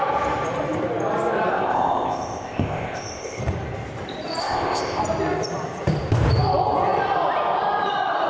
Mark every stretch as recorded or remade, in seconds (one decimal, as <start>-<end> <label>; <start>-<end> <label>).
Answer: 0.0-1.5 recorded; 1.5-3.4 remade; 3.4-4.4 recorded; 4.4-5.0 remade; 5.0-8.3 recorded